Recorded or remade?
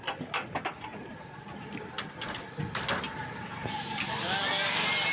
recorded